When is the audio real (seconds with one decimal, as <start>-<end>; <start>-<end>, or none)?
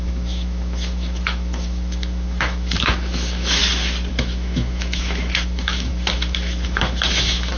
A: 3.6-4.1